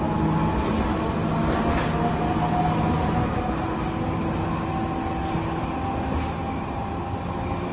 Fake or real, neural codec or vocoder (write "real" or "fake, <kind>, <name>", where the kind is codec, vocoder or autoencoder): real